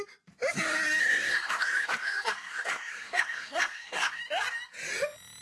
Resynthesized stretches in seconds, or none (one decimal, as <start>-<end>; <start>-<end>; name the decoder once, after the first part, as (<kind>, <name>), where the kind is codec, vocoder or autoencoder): 1.0-4.2 (codec, SNAC)